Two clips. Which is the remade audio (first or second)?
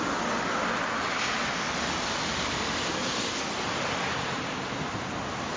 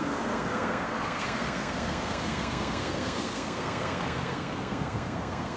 second